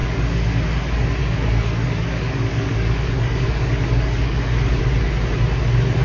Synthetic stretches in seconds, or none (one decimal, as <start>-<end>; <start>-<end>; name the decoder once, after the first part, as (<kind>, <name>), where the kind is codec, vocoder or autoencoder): 0.0-0.7 (codec, DAC); 1.2-4.8